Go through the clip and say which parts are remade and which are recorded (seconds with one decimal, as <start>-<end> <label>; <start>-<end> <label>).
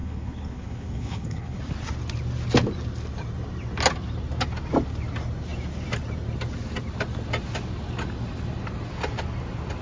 0.0-1.6 remade; 1.6-9.8 recorded